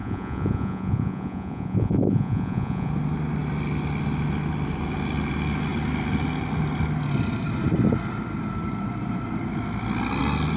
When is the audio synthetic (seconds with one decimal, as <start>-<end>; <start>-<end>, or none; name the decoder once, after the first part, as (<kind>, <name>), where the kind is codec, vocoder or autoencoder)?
0.0-2.9 (vocoder, Vocos)